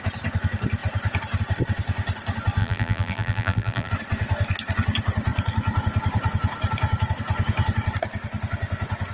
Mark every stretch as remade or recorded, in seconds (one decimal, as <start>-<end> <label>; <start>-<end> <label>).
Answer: 0.0-2.6 recorded; 2.6-3.9 remade; 3.9-9.1 recorded